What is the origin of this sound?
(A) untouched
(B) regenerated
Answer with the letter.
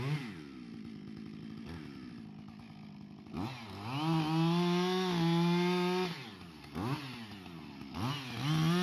A